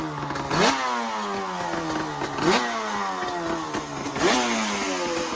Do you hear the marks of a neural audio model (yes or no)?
no